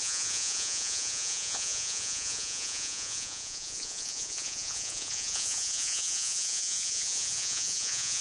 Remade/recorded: remade